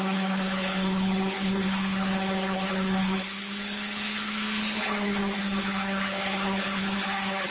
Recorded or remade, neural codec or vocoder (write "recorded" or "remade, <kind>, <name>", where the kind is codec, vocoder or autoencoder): remade, codec, HILCodec